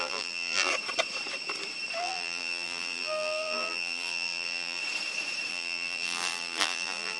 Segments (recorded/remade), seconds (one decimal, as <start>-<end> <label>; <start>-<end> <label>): 0.0-0.7 remade; 0.7-2.0 recorded; 2.0-4.8 remade; 4.8-5.5 recorded; 5.5-7.2 remade